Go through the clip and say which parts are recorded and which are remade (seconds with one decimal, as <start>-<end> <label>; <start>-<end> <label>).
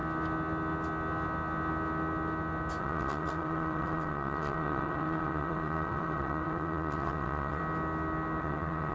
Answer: 0.0-2.8 recorded; 2.8-7.6 remade; 7.6-8.4 recorded; 8.4-8.9 remade